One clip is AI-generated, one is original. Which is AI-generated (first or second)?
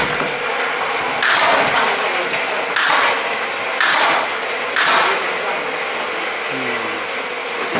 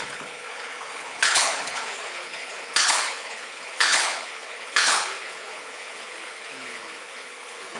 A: second